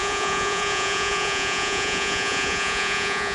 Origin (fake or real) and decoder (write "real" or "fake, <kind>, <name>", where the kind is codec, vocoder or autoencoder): fake, vocoder, Vocos